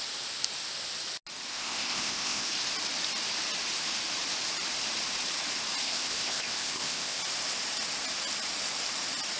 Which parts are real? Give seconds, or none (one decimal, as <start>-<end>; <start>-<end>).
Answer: 0.0-1.5; 2.5-5.8; 7.2-9.4

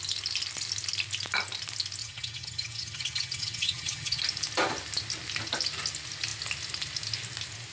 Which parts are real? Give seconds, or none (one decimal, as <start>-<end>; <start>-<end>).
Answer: 0.0-2.0; 4.2-7.7

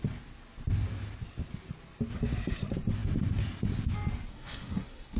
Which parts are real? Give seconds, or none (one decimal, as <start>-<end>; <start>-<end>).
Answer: 0.0-4.3

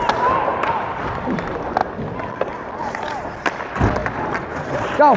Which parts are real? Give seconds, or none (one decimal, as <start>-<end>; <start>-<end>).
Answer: 0.0-0.5; 1.0-5.2

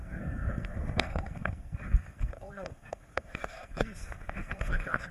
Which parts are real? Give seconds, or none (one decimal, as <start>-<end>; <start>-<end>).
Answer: none

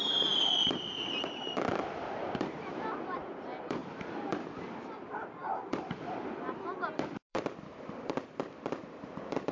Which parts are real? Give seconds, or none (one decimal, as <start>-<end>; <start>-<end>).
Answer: none

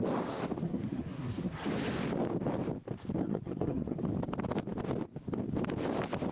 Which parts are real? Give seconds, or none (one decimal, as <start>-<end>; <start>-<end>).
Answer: 0.0-0.6; 1.7-3.2; 4.0-6.3

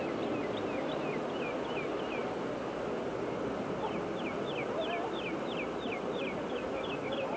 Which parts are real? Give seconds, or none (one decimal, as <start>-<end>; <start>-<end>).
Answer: 0.0-7.4